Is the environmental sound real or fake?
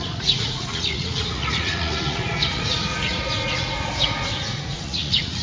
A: fake